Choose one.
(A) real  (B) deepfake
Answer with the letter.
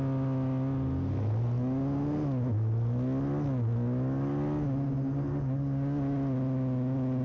A